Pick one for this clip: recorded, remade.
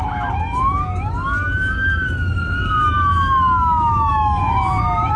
remade